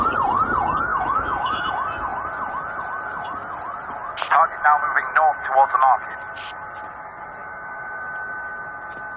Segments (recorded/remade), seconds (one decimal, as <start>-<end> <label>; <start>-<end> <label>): 0.0-0.9 recorded; 0.9-1.7 remade; 1.7-7.4 recorded; 7.4-8.0 remade; 8.0-9.2 recorded

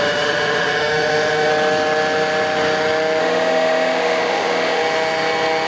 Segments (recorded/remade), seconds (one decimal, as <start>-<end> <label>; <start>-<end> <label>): 0.0-1.5 remade; 1.5-3.2 recorded; 3.2-4.8 remade; 4.8-5.7 recorded

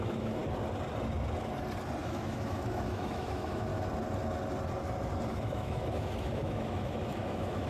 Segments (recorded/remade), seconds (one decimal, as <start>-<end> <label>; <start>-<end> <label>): 0.0-0.4 remade; 0.4-2.0 recorded; 2.0-3.7 remade; 3.7-5.3 recorded; 5.3-7.7 remade

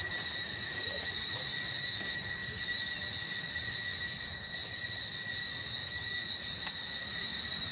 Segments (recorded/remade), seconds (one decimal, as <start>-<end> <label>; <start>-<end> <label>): 0.0-0.4 recorded; 0.4-1.4 remade; 1.4-5.8 recorded; 5.8-6.3 remade; 6.3-7.7 recorded

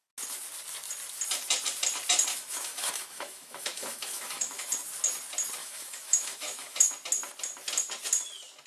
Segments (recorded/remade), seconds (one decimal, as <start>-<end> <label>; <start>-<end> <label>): 0.0-2.3 recorded; 2.3-4.7 remade; 4.7-5.6 recorded; 5.6-6.9 remade; 6.9-8.7 recorded

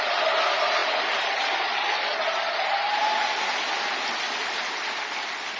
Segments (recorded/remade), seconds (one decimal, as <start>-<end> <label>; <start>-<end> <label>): 0.0-5.6 recorded

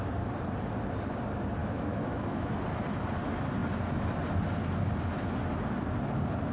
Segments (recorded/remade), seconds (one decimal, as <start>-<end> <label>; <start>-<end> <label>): 0.0-1.6 recorded; 1.6-2.5 remade; 2.5-6.5 recorded